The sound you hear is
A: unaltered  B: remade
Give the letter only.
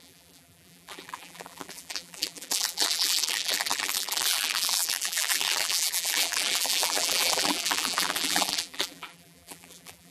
B